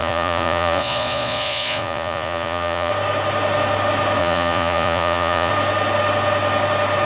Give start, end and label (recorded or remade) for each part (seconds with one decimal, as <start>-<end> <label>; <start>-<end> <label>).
0.0-2.9 remade; 2.9-4.2 recorded; 4.2-5.5 remade; 5.5-7.1 recorded